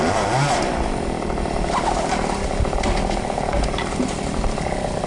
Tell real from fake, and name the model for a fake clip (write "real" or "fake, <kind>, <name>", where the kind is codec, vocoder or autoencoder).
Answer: real